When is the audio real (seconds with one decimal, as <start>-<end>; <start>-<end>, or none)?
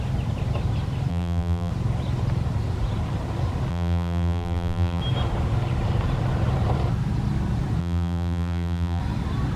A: 0.0-1.1; 1.7-3.7; 5.0-7.8; 9.0-9.6